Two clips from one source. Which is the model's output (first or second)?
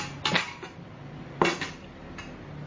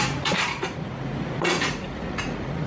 second